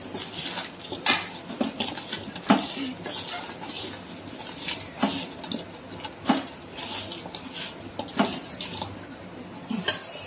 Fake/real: real